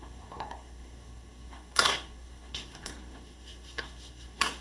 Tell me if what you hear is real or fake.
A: fake